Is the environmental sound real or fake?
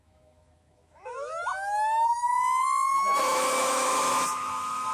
fake